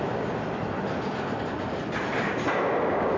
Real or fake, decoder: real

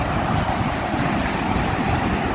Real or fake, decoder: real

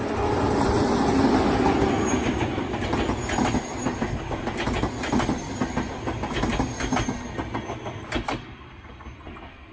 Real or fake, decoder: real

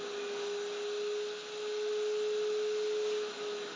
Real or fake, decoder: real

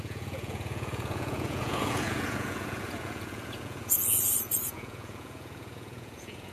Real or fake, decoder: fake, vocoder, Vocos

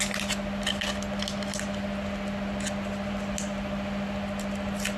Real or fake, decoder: real